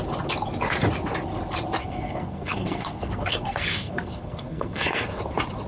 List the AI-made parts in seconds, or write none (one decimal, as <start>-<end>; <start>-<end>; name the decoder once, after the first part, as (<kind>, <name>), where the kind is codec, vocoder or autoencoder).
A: 1.8-5.2 (codec, SNAC)